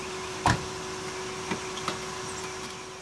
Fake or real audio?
real